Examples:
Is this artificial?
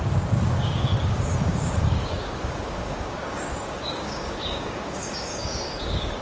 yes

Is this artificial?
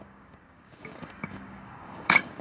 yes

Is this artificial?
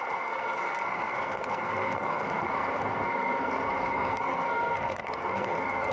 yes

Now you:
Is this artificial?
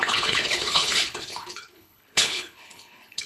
yes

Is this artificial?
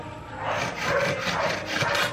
no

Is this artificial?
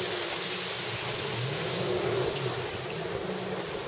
no